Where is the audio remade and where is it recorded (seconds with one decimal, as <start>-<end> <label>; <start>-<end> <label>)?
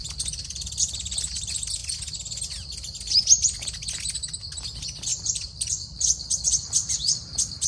0.0-5.1 recorded; 5.1-7.7 remade